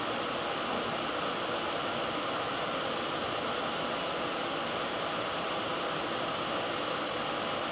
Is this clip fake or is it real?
real